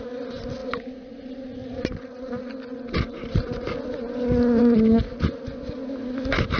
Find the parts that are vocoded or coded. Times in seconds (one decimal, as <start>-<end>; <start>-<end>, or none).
none